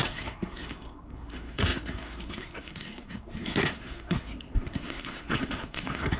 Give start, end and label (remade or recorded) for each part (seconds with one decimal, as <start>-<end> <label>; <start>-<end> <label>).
0.0-6.2 remade